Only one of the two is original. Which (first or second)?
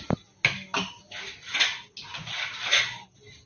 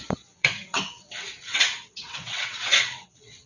first